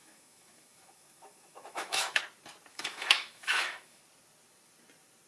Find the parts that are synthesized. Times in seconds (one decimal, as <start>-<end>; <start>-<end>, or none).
0.0-2.2; 2.7-4.0